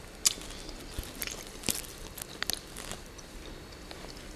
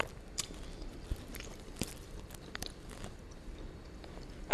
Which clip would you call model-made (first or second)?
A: second